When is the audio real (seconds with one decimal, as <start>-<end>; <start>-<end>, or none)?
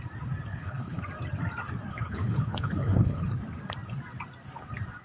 0.0-0.5; 1.0-1.9; 3.4-5.0